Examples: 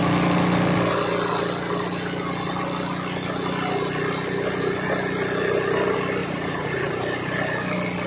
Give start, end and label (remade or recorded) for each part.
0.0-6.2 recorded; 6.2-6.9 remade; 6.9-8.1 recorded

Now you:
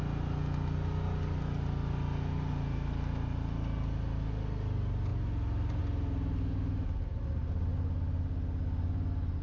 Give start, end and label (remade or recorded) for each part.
0.0-9.4 recorded

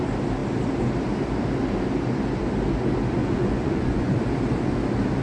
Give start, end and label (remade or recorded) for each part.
0.0-3.2 recorded; 3.2-4.1 remade; 4.1-5.2 recorded

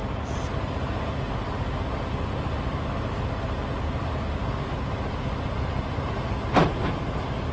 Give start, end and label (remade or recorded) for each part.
0.0-7.5 recorded